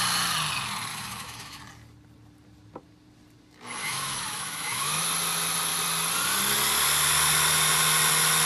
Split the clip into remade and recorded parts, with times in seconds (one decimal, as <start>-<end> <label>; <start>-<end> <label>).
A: 0.0-0.9 recorded; 0.9-1.6 remade; 1.6-3.8 recorded; 3.8-5.1 remade; 5.1-8.5 recorded